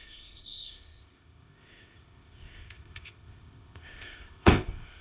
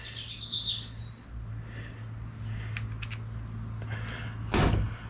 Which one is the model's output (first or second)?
first